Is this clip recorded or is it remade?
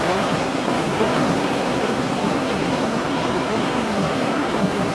remade